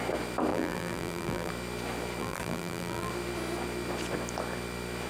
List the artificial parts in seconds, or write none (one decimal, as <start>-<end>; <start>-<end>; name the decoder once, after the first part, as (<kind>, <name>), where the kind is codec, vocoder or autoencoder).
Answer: 0.5-1.5 (vocoder, BigVGAN v2); 2.2-3.1